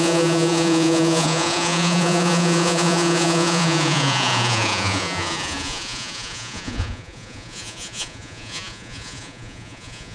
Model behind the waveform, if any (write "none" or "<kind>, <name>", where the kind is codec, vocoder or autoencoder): vocoder, Vocos